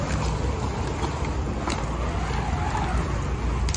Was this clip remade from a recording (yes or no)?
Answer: no